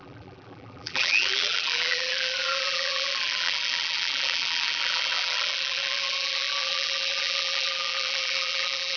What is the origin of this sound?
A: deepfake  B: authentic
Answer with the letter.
A